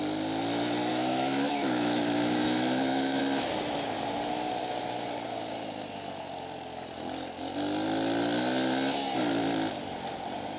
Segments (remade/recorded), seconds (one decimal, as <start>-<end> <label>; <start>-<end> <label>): 0.0-0.9 recorded; 0.9-3.2 remade; 3.2-10.6 recorded